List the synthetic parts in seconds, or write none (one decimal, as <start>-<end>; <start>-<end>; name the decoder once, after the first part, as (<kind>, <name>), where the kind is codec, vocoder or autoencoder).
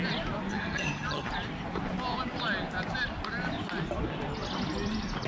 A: 0.5-1.3 (vocoder, HiFi-GAN)